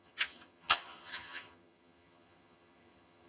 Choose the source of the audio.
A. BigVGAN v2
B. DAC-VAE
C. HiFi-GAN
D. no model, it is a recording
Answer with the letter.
C